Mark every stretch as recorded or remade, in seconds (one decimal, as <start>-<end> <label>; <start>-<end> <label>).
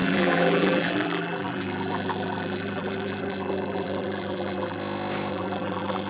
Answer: 0.0-4.8 remade; 4.8-5.3 recorded; 5.3-6.1 remade